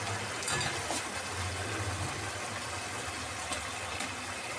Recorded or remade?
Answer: recorded